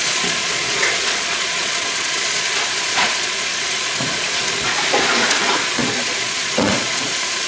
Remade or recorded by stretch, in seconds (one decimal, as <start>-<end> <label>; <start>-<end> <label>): 0.0-7.5 remade